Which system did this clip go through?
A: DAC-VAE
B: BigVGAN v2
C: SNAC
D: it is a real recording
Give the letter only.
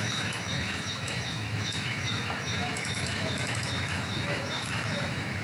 A